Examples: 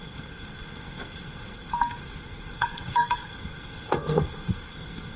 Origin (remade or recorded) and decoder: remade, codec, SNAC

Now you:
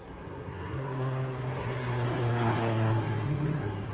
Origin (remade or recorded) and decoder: remade, codec, SNAC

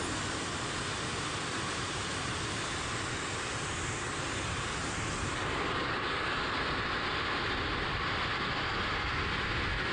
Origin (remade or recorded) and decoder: recorded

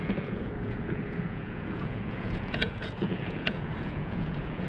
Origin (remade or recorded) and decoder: remade, vocoder, Vocos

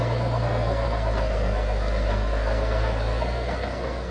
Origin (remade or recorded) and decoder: remade, codec, SNAC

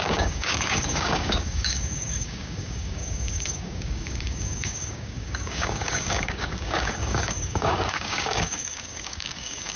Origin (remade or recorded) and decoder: remade, codec, DAC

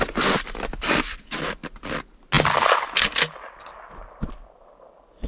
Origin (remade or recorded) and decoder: recorded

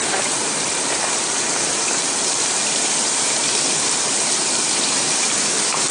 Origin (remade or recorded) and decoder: remade, vocoder, BigVGAN v2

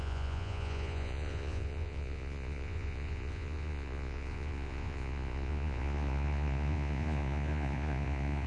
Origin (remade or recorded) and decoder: remade, vocoder, Vocos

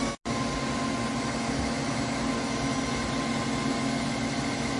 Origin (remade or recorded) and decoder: recorded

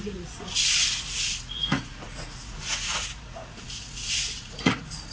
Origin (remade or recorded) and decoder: remade, vocoder, Vocos